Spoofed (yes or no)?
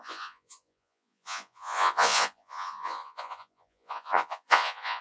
yes